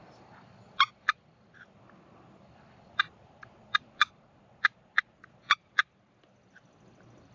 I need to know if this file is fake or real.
real